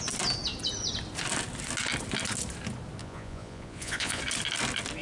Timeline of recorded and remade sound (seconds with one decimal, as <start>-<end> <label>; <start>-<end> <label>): 0.0-3.0 recorded; 3.0-4.2 remade; 4.2-5.0 recorded